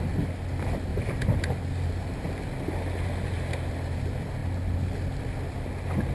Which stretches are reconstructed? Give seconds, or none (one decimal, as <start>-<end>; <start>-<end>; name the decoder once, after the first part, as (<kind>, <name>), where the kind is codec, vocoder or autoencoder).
0.9-1.5 (vocoder, BigVGAN v2)